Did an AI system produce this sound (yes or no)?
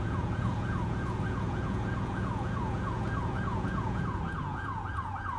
yes